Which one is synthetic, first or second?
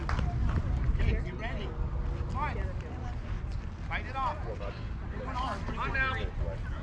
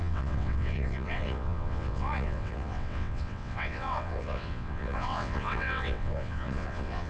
second